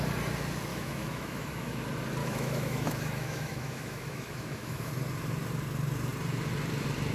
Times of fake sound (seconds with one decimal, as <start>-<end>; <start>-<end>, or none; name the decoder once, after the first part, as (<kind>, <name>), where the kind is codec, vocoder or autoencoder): 0.7-1.8 (autoencoder, DAC-VAE); 2.2-4.9